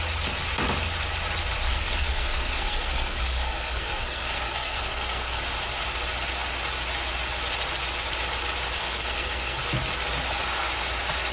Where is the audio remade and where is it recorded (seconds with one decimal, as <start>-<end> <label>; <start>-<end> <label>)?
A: 0.0-1.7 recorded; 1.7-5.4 remade; 5.4-8.8 recorded; 8.8-9.6 remade; 9.6-11.3 recorded